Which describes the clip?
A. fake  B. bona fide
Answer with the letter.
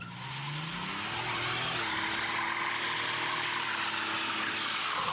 B